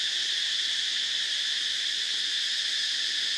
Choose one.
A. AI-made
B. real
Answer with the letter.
B